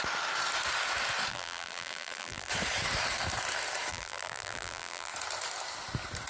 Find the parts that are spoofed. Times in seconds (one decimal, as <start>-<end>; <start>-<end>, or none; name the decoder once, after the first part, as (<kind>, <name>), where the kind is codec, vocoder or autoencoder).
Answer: 1.3-2.5 (vocoder, BigVGAN v2); 3.9-5.1